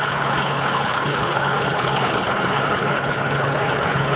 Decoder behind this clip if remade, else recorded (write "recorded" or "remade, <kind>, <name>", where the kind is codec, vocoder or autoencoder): remade, codec, HILCodec